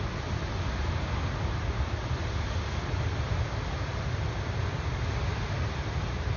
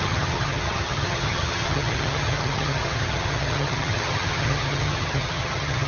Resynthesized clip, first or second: second